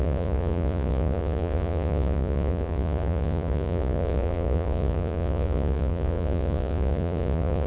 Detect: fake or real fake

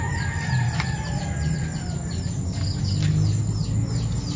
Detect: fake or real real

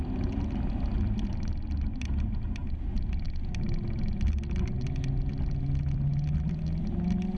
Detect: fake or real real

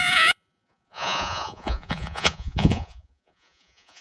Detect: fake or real fake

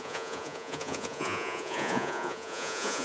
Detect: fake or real fake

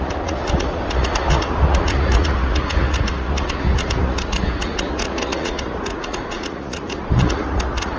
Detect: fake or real fake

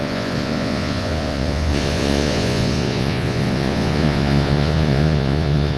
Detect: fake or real fake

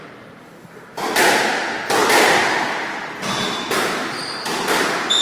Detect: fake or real real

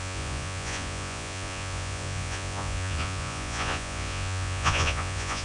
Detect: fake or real fake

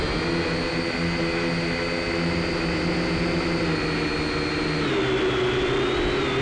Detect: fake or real real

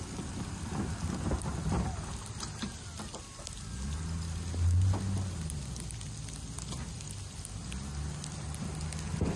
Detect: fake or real real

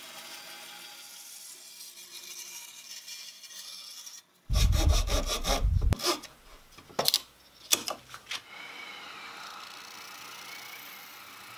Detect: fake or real real